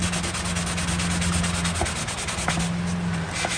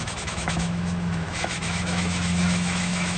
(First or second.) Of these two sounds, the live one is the first